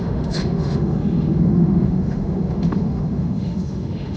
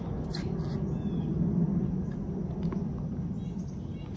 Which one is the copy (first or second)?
first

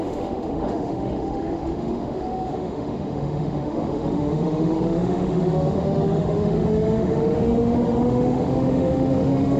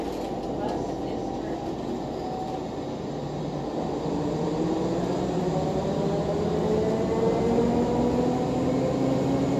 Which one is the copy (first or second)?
first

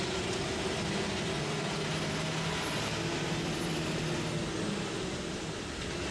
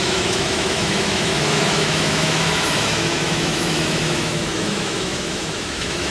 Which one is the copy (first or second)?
second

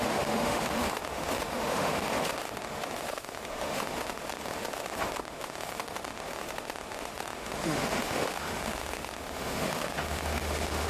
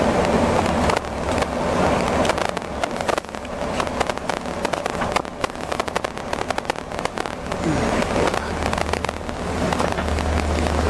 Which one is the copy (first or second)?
first